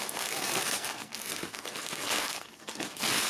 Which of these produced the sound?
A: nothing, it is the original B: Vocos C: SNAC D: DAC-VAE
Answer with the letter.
C